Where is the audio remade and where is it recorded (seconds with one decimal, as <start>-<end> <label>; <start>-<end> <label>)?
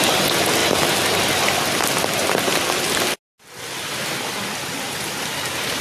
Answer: 0.0-5.8 recorded